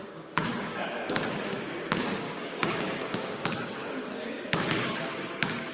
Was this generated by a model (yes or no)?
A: yes